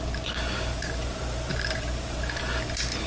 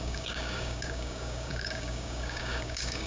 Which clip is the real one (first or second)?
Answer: first